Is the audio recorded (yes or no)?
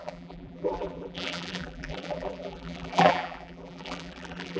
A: no